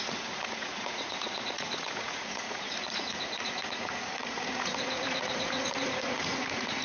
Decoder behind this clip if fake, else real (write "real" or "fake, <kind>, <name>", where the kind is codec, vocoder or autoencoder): fake, vocoder, Vocos